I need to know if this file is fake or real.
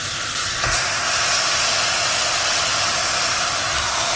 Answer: real